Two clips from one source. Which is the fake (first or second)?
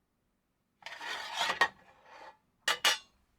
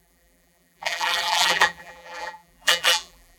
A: second